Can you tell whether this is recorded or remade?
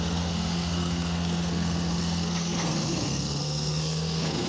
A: remade